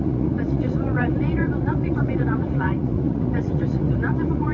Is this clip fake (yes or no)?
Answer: yes